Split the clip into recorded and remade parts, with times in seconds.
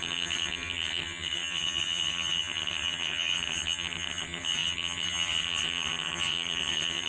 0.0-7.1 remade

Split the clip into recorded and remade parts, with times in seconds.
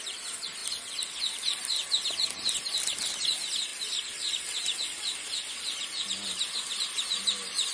0.0-7.7 recorded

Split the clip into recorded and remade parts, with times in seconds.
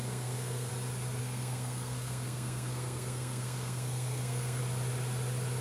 0.0-0.7 remade; 0.7-1.2 recorded; 1.2-4.6 remade; 4.6-5.6 recorded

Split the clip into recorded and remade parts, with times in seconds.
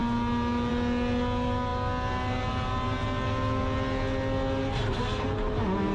0.0-5.9 recorded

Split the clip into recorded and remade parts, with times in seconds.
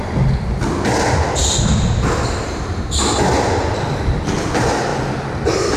0.0-5.8 recorded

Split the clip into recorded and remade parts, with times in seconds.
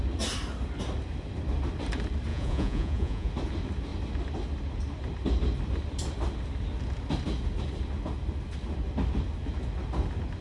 0.0-2.3 recorded; 2.3-3.3 remade; 3.3-10.4 recorded